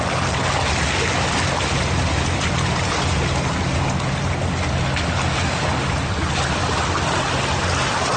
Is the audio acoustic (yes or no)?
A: yes